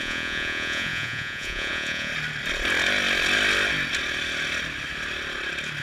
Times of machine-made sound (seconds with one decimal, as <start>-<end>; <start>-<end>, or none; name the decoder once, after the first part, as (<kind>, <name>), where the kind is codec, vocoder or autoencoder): 0.0-2.1 (vocoder, Vocos)